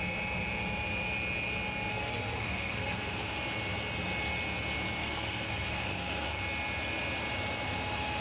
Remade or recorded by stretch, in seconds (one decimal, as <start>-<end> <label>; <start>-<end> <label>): 0.0-1.9 recorded; 1.9-3.0 remade; 3.0-5.0 recorded; 5.0-6.4 remade; 6.4-8.2 recorded